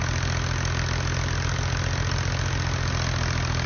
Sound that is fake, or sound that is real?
real